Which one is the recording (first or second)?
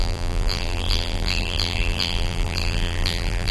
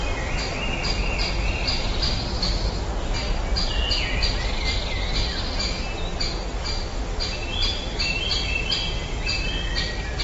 second